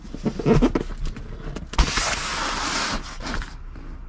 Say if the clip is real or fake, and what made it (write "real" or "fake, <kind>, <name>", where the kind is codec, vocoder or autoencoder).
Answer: real